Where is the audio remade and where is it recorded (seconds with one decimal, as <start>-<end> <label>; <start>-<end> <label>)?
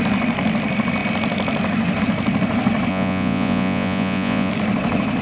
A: 0.0-2.9 recorded; 2.9-4.5 remade; 4.5-5.2 recorded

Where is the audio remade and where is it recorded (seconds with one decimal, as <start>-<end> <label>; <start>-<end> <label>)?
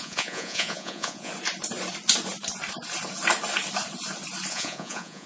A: 0.0-1.3 remade; 1.3-4.5 recorded; 4.5-5.3 remade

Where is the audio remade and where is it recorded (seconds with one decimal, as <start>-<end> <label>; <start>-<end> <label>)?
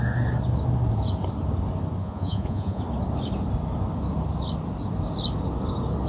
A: 0.0-2.0 recorded; 2.0-2.8 remade; 2.8-6.1 recorded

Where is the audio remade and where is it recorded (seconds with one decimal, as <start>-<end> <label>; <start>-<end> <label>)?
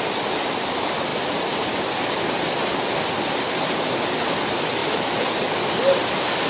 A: 0.0-6.5 recorded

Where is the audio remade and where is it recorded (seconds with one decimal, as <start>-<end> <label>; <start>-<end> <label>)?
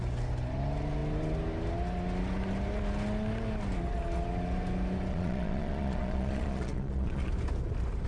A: 0.0-5.1 recorded; 5.1-7.3 remade; 7.3-8.1 recorded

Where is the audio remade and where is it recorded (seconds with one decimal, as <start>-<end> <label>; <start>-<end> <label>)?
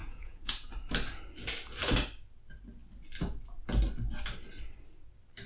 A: 0.0-0.7 remade; 0.7-5.5 recorded